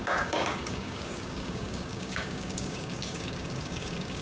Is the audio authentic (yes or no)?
no